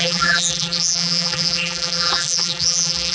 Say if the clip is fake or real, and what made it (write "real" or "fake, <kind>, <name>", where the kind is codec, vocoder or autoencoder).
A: fake, vocoder, BigVGAN v2